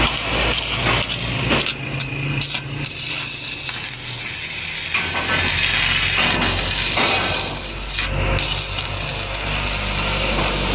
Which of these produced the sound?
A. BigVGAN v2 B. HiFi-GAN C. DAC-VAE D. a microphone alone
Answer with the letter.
D